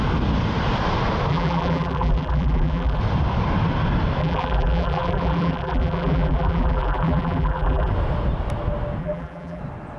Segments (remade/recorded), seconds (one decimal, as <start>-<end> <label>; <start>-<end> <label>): 0.0-1.3 recorded; 1.3-3.0 remade; 3.0-4.2 recorded; 4.2-7.9 remade; 7.9-9.0 recorded; 9.0-9.6 remade; 9.6-10.0 recorded